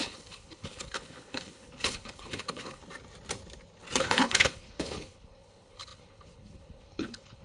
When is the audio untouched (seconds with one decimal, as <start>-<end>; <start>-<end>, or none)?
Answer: 2.8-4.0